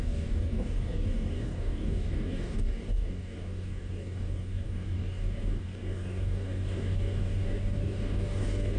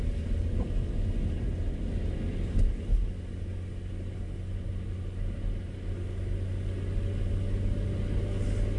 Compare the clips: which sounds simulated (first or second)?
first